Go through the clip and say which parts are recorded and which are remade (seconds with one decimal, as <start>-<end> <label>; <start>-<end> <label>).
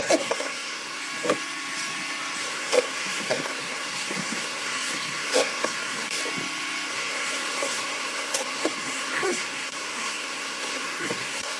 0.0-1.0 remade; 1.0-2.4 recorded; 2.4-6.2 remade; 6.2-6.9 recorded; 6.9-11.6 remade